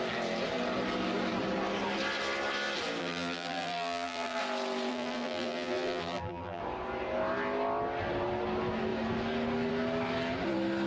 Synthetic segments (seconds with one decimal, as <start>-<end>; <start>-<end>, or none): 3.0-4.4; 4.9-6.6